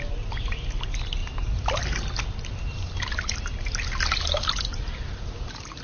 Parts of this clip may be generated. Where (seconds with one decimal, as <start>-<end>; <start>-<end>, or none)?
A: none